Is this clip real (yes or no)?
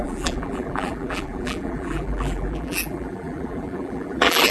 no